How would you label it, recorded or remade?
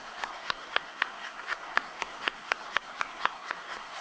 remade